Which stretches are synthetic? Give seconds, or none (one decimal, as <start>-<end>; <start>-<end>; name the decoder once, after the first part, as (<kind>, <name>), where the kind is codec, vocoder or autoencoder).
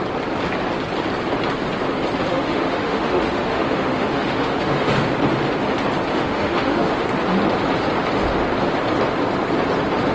2.3-4.9 (autoencoder, DAC-VAE); 6.1-7.0